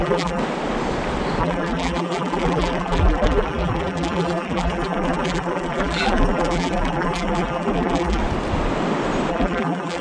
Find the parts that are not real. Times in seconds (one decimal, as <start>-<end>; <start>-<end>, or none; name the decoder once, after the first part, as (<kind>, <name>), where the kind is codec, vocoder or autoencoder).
0.0-0.4 (vocoder, BigVGAN v2); 1.4-8.2; 9.3-10.0